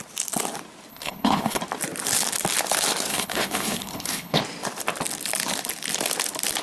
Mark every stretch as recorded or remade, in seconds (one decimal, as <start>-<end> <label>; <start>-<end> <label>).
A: 0.0-0.9 recorded; 0.9-1.6 remade; 1.6-3.1 recorded; 3.1-4.4 remade; 4.4-6.6 recorded